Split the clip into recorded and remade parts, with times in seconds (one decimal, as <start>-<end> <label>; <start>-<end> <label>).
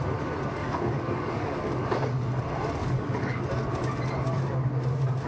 0.0-0.6 recorded; 0.6-1.9 remade; 1.9-2.8 recorded; 2.8-3.4 remade; 3.4-5.3 recorded